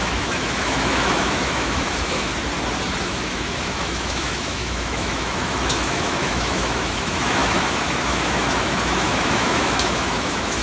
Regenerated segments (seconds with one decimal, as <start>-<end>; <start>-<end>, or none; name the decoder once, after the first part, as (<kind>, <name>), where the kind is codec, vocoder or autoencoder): 0.0-2.3 (autoencoder, DAC-VAE); 3.0-10.6